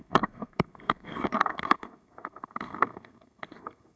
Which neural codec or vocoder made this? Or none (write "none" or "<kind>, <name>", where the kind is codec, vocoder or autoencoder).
codec, SNAC